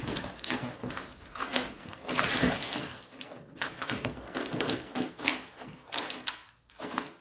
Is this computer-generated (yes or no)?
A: yes